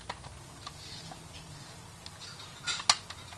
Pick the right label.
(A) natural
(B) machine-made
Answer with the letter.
A